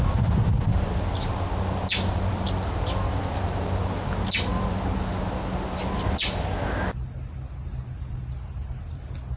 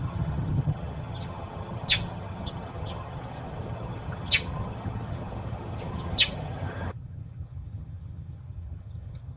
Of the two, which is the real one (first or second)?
first